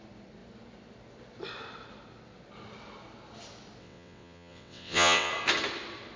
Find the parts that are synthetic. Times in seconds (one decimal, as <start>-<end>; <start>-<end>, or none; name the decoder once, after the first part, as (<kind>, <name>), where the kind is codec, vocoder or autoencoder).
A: 3.8-5.3 (vocoder, WaveNeXt)